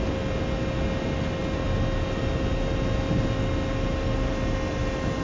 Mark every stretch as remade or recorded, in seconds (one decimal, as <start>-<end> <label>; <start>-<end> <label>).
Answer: 0.0-5.2 recorded